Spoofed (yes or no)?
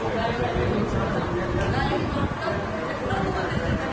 no